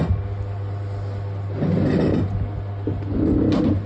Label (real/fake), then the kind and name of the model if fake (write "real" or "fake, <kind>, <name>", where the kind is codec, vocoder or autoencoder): real